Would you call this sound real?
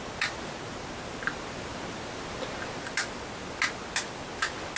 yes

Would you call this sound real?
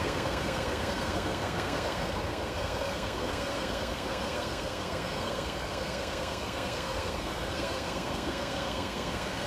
no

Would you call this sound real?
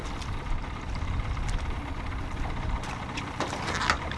yes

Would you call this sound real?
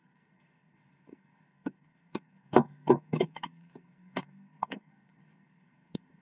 no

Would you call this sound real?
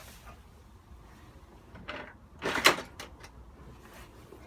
yes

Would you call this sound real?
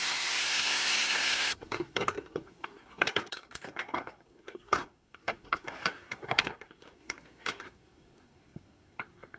no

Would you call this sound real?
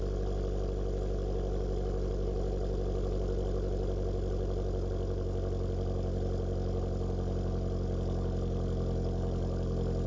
yes